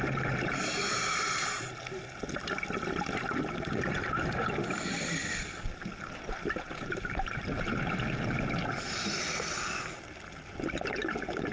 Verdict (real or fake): real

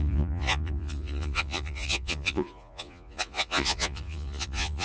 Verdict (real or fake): fake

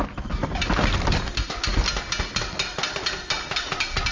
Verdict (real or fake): real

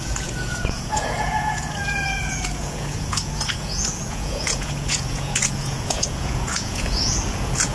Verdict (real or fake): fake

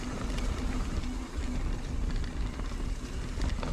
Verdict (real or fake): real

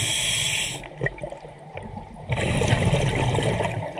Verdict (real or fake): real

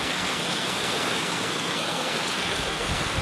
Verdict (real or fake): fake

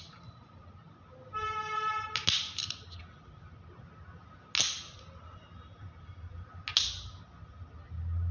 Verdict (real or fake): real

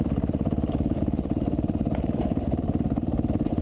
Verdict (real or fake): fake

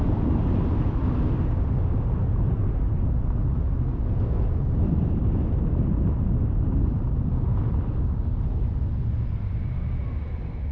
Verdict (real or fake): real